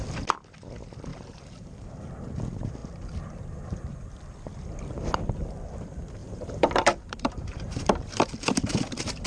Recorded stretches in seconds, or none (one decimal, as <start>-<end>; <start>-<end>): 0.0-1.1; 2.3-6.2; 8.2-9.3